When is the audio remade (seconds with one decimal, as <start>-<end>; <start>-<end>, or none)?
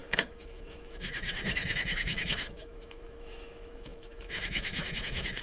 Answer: 0.0-5.4